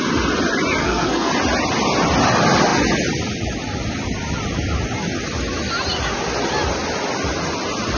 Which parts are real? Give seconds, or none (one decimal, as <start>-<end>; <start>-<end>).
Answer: 0.0-0.8; 1.3-8.0